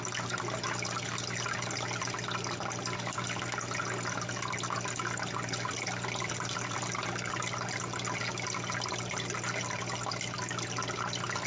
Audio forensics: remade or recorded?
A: recorded